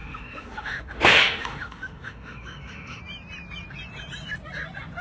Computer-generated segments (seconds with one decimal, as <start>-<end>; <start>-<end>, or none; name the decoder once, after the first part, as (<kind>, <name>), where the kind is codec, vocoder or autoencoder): 0.0-3.0 (autoencoder, DAC-VAE)